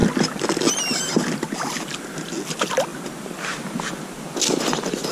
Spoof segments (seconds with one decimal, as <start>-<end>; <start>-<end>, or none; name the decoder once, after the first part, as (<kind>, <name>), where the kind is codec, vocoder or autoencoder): none